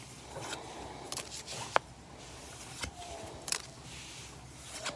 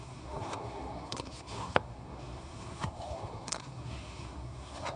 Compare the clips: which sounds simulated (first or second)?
second